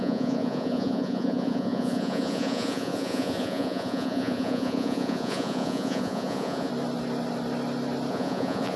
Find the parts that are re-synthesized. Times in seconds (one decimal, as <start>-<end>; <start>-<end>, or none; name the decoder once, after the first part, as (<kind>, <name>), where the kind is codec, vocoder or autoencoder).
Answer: 0.0-6.7 (vocoder, Vocos); 8.1-8.8